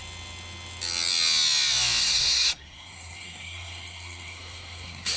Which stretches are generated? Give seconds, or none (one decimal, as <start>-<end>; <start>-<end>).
2.0-5.2